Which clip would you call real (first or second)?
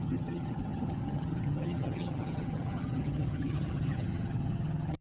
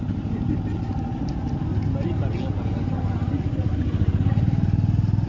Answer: second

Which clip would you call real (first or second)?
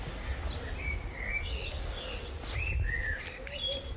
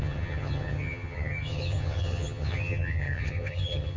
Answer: first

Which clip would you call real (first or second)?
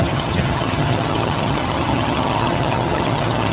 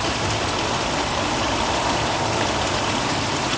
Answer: second